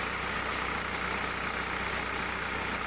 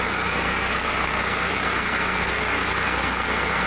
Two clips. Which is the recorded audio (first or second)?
first